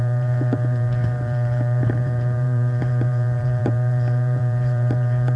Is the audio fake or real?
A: fake